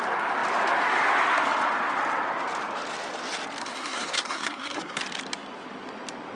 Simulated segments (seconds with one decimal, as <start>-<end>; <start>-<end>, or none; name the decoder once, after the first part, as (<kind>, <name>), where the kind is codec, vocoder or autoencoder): 3.6-5.0 (codec, SNAC)